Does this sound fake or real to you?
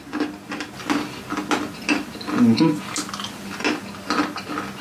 real